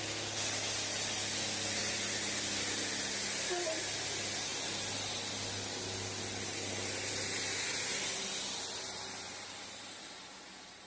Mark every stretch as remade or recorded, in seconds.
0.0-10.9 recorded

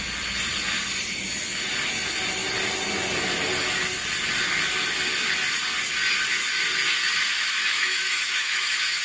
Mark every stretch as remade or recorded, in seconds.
0.0-7.3 recorded; 7.3-9.0 remade

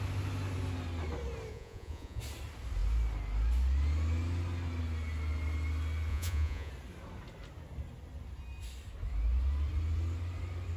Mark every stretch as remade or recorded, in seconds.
0.0-1.5 recorded; 1.5-2.2 remade; 2.2-6.1 recorded; 6.1-6.7 remade; 6.7-10.8 recorded